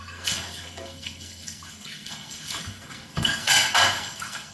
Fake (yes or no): yes